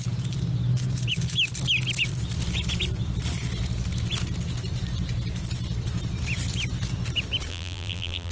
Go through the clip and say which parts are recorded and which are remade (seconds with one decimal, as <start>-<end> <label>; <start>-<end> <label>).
0.0-7.5 recorded; 7.5-8.3 remade